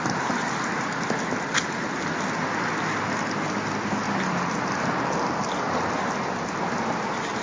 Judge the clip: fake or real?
real